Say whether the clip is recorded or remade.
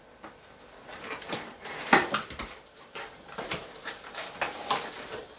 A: remade